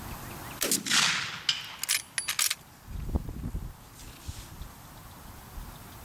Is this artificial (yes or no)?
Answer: no